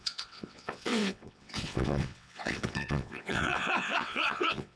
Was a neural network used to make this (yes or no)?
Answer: yes